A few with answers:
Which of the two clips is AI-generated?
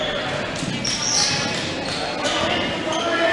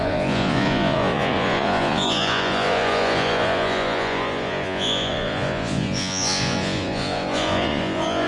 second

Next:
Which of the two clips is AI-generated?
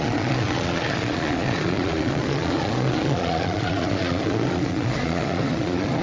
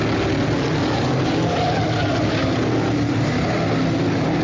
first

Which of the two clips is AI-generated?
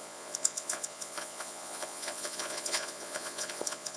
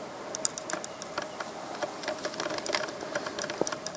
first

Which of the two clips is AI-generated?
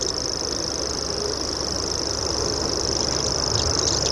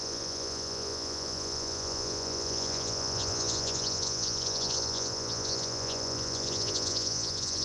second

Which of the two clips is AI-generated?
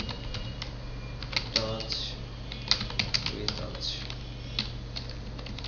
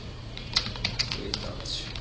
second